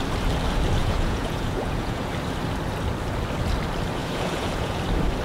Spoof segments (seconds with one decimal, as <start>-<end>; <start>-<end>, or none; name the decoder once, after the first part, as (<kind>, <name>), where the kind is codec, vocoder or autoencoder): 0.8-2.1 (vocoder, Vocos); 4.0-4.8